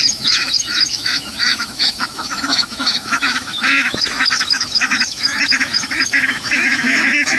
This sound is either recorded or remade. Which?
remade